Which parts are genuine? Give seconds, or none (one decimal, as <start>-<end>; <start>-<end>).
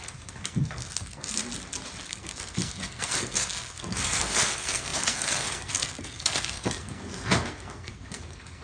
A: 1.4-2.1